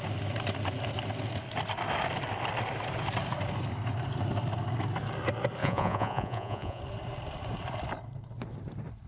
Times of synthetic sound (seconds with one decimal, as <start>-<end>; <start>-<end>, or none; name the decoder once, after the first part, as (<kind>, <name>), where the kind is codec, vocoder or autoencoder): 5.6-6.8 (vocoder, Vocos)